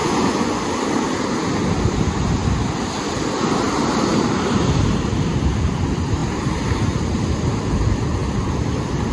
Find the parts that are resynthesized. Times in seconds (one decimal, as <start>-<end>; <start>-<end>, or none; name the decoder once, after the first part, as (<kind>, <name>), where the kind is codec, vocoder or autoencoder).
0.0-0.6 (vocoder, Vocos)